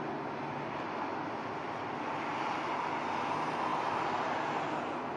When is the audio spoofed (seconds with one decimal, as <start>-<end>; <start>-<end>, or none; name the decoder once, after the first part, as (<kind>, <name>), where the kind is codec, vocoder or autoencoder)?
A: 3.7-4.2 (vocoder, BigVGAN v2)